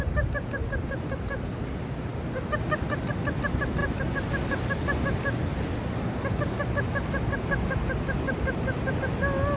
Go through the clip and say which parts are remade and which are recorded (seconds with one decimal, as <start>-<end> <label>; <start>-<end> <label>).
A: 0.0-9.6 recorded